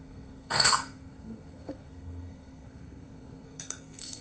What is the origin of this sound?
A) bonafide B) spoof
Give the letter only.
B